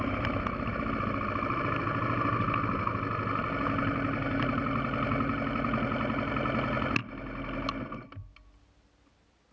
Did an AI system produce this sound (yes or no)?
no